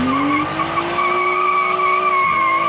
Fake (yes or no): no